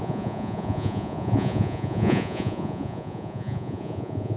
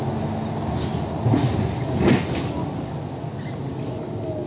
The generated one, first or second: first